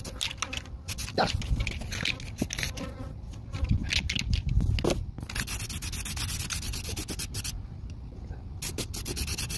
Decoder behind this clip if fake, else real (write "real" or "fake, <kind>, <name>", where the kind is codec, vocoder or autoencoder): real